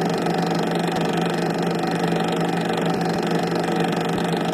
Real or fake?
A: real